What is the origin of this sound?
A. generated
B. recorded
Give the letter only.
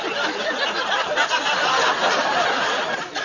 B